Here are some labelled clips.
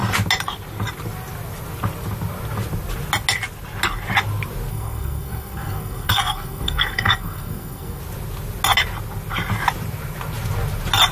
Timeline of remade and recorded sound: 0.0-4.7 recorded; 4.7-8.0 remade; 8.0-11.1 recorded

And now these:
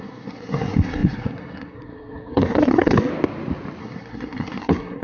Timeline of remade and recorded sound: 0.0-3.1 remade; 3.1-3.8 recorded; 3.8-5.0 remade

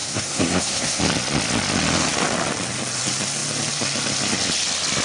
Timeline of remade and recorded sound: 0.0-1.0 remade; 1.0-5.0 recorded

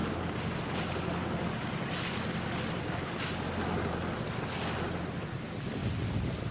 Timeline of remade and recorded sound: 0.0-6.5 recorded